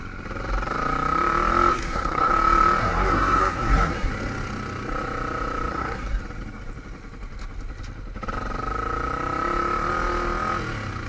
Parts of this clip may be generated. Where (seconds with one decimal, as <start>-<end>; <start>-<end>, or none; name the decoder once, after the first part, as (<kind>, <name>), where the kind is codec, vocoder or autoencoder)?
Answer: 1.7-2.3 (codec, SNAC); 2.8-4.1; 5.7-6.2